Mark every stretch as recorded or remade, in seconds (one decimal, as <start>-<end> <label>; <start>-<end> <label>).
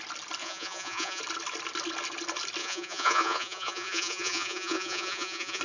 0.0-0.4 recorded; 0.4-1.2 remade; 1.2-2.6 recorded; 2.6-5.6 remade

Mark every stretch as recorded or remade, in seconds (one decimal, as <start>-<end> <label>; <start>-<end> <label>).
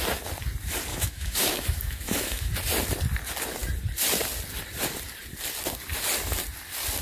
0.0-0.9 recorded; 0.9-2.5 remade; 2.5-7.0 recorded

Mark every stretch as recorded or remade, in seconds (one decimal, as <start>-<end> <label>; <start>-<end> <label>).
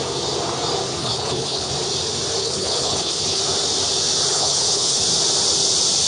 0.0-1.0 recorded; 1.0-1.7 remade; 1.7-2.4 recorded; 2.4-3.4 remade; 3.4-4.3 recorded; 4.3-5.0 remade; 5.0-6.1 recorded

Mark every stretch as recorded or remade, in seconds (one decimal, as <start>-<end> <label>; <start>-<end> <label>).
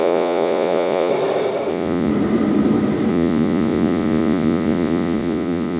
0.0-1.1 remade; 1.1-1.7 recorded; 1.7-2.1 remade; 2.1-3.1 recorded; 3.1-5.8 remade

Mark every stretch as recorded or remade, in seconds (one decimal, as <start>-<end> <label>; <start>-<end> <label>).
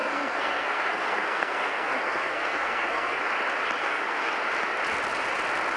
0.0-3.2 remade; 3.2-3.8 recorded; 3.8-4.3 remade; 4.3-5.8 recorded